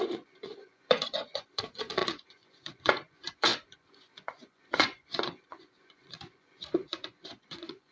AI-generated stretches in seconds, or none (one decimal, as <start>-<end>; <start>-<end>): 0.0-7.9